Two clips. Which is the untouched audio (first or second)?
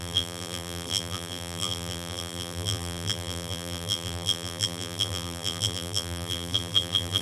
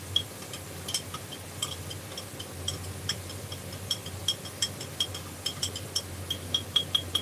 second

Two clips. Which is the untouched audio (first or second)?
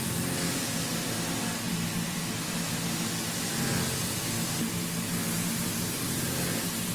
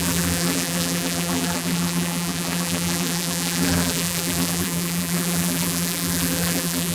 first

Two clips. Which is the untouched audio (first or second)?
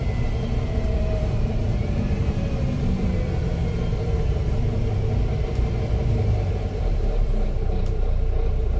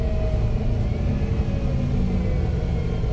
second